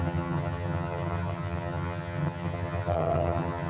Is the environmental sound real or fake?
fake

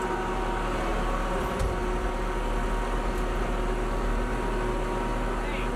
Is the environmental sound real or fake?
real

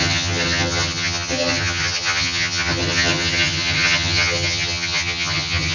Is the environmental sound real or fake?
fake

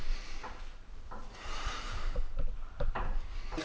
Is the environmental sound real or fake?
fake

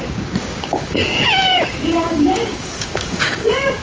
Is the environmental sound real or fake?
fake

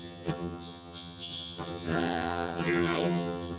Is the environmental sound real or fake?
fake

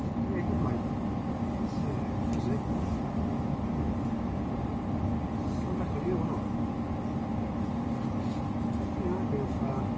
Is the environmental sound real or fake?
real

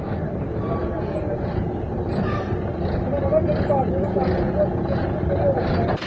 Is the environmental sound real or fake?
real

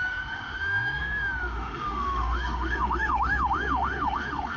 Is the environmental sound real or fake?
fake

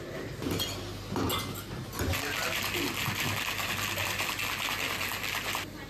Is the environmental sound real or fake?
real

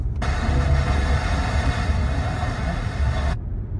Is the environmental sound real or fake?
real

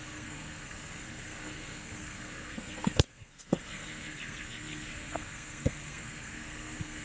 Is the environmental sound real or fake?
fake